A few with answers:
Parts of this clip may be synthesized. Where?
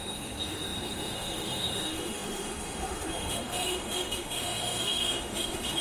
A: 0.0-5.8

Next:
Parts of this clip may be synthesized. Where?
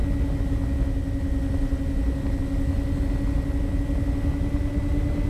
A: none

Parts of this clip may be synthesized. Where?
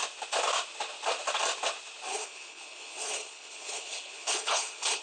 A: 2.1-5.0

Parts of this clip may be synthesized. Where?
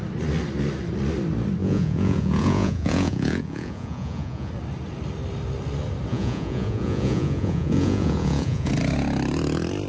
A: 1.6-4.5; 6.1-8.7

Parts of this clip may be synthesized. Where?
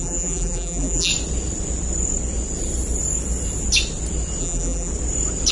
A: 0.0-1.1; 4.4-4.9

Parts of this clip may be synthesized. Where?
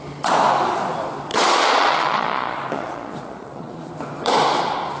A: 1.3-3.9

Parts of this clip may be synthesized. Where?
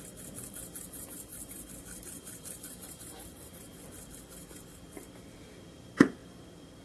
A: 1.3-5.4; 6.2-6.8